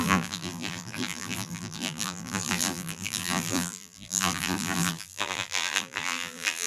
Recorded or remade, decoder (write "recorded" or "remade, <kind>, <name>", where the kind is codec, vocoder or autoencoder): remade, vocoder, BigVGAN v2